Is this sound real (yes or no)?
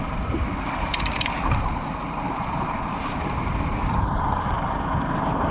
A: no